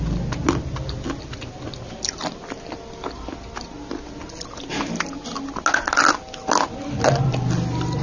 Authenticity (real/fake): real